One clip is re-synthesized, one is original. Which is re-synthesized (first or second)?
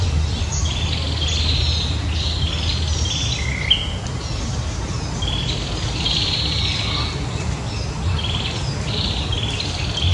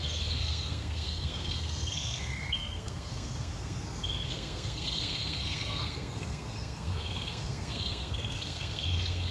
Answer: second